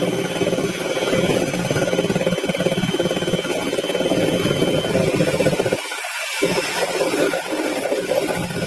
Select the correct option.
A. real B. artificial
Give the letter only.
A